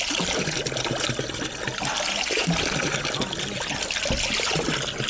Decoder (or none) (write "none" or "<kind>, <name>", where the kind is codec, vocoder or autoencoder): none